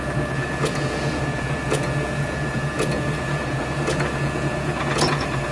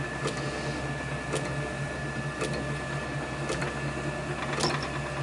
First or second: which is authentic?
second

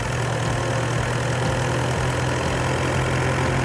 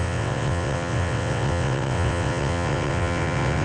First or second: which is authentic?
first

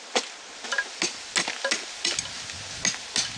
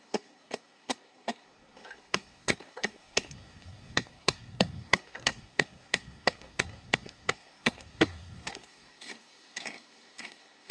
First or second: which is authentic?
first